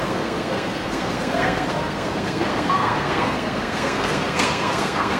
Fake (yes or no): yes